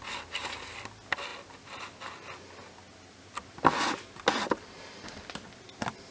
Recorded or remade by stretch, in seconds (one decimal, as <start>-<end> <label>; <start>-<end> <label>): 0.0-6.1 recorded